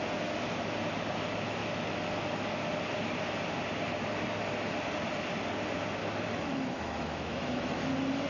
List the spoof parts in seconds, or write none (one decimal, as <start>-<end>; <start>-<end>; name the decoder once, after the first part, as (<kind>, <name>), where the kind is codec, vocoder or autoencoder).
1.6-2.1 (autoencoder, DAC-VAE); 6.0-7.9